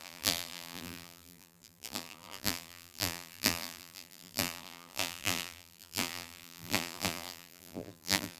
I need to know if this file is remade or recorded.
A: remade